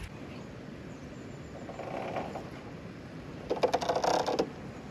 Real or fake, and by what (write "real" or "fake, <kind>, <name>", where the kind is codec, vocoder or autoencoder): real